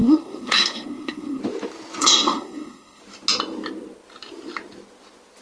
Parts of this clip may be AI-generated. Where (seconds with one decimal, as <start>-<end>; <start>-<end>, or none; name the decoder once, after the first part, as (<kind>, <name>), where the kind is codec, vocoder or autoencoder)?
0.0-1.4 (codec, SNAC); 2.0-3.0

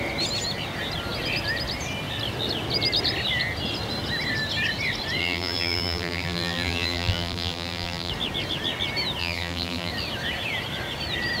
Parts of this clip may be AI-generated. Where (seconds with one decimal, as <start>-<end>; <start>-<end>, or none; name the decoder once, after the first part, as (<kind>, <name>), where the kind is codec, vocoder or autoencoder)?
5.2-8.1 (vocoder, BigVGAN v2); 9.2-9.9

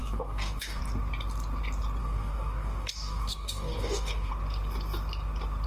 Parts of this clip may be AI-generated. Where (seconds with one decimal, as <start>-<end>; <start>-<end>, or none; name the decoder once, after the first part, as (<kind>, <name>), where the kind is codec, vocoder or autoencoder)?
0.0-0.8 (codec, DAC); 2.0-4.3